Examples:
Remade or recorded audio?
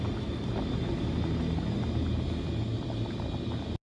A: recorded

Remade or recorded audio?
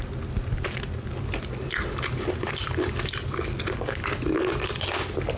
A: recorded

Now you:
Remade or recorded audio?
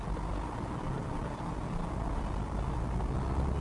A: recorded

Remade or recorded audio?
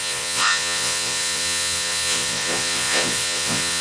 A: remade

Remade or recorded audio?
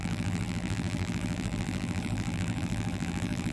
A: remade